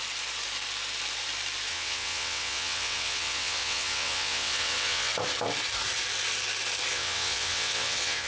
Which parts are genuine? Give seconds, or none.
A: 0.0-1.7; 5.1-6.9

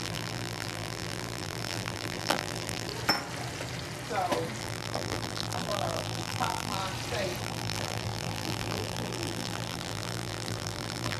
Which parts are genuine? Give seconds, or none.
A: 2.9-4.6; 6.8-7.4